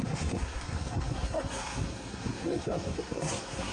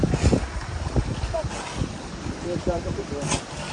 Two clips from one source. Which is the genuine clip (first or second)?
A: second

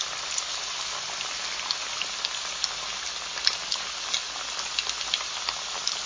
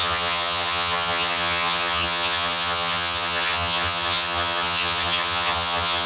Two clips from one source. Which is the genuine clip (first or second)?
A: first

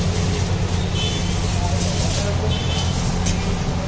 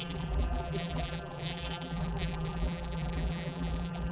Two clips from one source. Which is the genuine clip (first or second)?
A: first